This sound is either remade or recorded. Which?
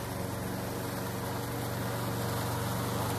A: recorded